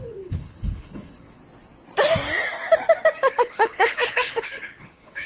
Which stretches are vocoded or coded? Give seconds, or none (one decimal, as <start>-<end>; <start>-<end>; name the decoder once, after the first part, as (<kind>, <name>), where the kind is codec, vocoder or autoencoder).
0.0-1.4 (codec, HILCodec); 3.3-5.3